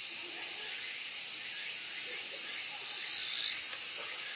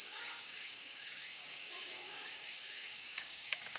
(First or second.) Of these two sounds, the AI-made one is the second